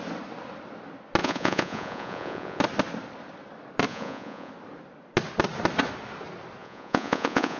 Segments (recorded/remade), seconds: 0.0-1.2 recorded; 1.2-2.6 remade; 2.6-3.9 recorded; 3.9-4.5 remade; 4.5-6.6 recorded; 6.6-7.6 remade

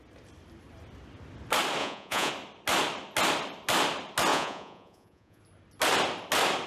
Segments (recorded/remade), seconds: 0.0-1.8 recorded; 1.8-2.3 remade; 2.3-4.3 recorded; 4.3-5.4 remade; 5.4-6.7 recorded

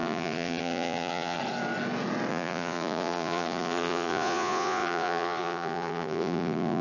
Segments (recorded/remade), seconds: 0.0-1.4 remade; 1.4-2.3 recorded; 2.3-6.8 remade

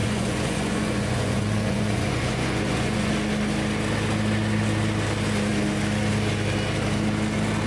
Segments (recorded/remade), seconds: 0.0-3.1 remade; 3.1-7.7 recorded

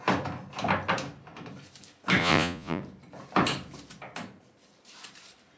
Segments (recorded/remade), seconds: 0.0-2.2 recorded; 2.2-2.8 remade; 2.8-5.6 recorded

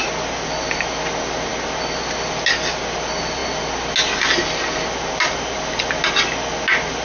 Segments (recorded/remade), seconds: 0.0-7.0 recorded

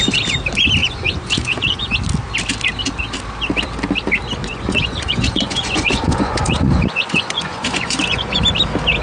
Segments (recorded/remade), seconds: 0.0-0.8 recorded; 0.8-1.9 remade; 1.9-4.4 recorded; 4.4-8.4 remade; 8.4-9.0 recorded

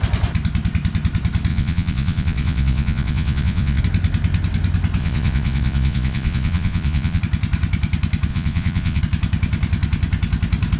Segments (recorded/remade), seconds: 0.0-1.5 recorded; 1.5-3.8 remade; 3.8-5.0 recorded; 5.0-7.2 remade; 7.2-8.3 recorded; 8.3-9.0 remade; 9.0-10.8 recorded